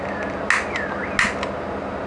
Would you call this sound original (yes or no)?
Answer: yes